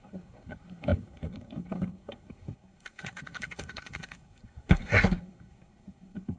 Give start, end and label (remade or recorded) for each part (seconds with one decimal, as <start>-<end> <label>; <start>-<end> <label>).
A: 0.0-6.4 remade